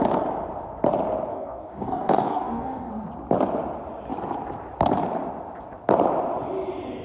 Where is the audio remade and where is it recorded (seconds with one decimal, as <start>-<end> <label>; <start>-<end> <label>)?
0.0-1.3 recorded; 1.3-2.9 remade; 2.9-7.0 recorded